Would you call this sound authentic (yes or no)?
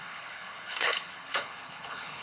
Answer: no